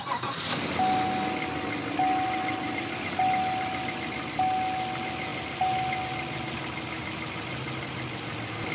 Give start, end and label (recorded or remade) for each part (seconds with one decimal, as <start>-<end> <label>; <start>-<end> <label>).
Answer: 0.0-8.7 recorded